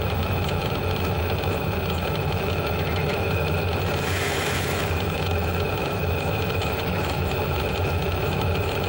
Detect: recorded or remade remade